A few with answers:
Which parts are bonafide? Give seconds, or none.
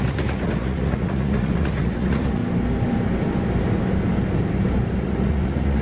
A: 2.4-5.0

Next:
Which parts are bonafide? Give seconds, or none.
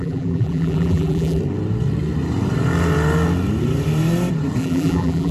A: 1.4-4.6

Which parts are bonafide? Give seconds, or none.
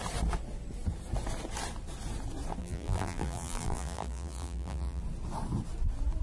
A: 0.0-2.6; 5.0-6.2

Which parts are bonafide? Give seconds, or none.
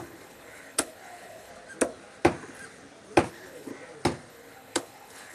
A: 1.5-3.3; 3.7-4.3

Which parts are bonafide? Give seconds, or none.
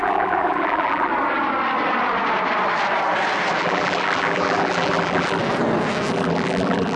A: 1.1-3.6; 5.4-6.1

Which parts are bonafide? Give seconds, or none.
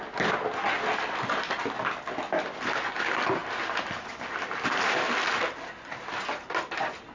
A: 0.0-7.1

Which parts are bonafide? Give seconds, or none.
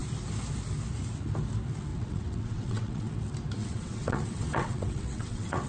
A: 0.0-1.9; 3.1-3.6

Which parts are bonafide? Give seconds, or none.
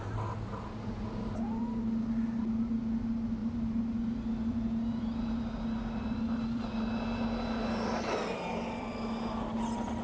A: 0.0-10.0